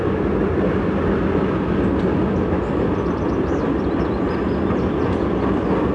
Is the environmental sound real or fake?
real